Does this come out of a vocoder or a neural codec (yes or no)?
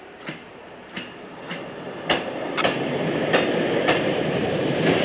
yes